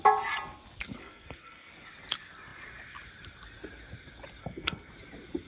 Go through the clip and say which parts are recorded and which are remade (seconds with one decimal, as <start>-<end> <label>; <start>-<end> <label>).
0.0-1.0 recorded; 1.0-1.7 remade; 1.7-4.4 recorded; 4.4-4.9 remade; 4.9-5.5 recorded